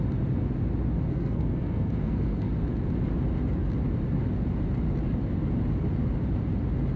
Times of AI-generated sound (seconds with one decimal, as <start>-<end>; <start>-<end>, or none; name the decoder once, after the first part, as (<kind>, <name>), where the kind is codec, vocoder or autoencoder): 1.1-2.5 (codec, SNAC)